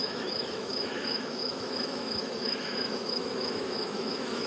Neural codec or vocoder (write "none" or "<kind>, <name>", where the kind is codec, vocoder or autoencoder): autoencoder, DAC-VAE